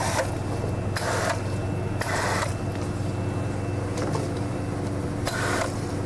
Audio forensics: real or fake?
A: real